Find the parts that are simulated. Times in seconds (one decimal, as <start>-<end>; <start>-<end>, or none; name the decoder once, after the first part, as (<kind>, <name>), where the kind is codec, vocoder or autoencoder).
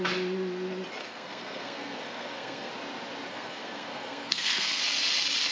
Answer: 1.0-2.7 (codec, SNAC); 3.3-4.8